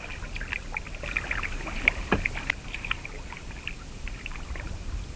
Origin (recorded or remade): recorded